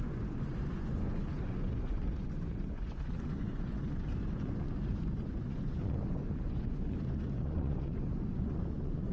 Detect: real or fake fake